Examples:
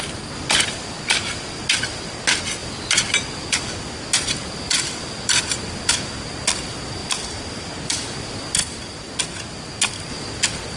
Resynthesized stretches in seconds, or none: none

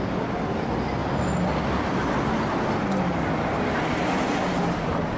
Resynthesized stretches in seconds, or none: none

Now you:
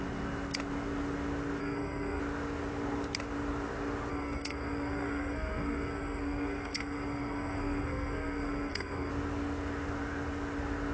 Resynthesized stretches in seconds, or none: 1.6-2.2 (codec, SNAC); 4.1-9.1

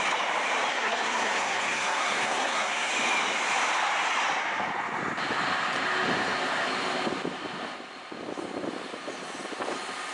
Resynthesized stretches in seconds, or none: 0.7-2.9 (codec, SNAC)

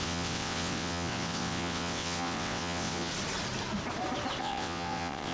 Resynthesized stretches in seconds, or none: 0.0-3.1 (vocoder, WaveNeXt); 4.4-5.3

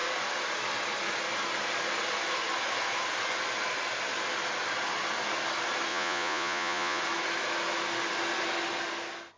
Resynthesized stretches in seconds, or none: 5.9-7.0 (vocoder, Vocos)

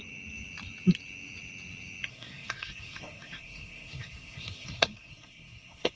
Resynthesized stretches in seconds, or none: 2.1-6.0 (codec, SNAC)

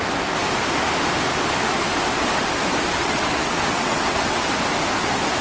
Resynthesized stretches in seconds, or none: 3.0-4.4 (vocoder, WaveNeXt)